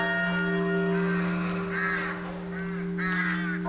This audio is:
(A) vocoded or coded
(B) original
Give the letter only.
B